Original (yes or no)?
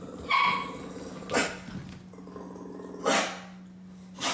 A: yes